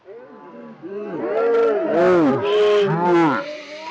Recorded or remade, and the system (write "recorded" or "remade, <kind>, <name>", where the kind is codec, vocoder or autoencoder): recorded